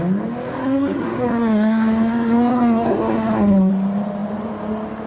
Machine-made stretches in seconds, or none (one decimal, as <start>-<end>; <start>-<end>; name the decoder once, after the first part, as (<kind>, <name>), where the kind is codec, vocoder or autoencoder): 0.6-3.7 (codec, SNAC)